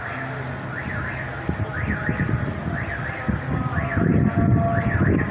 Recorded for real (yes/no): yes